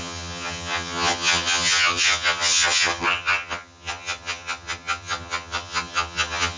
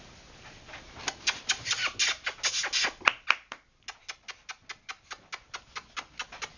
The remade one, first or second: first